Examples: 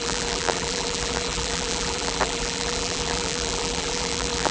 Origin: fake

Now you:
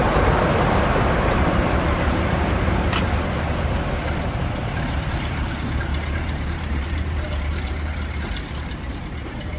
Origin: fake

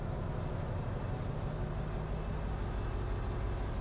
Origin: real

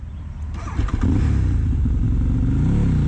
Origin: real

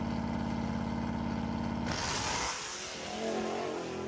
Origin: real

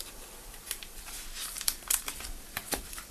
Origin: fake